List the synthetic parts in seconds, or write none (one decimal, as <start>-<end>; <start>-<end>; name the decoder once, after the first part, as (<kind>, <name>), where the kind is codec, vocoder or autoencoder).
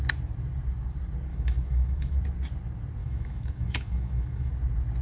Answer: 1.3-2.2 (autoencoder, DAC-VAE); 3.0-4.5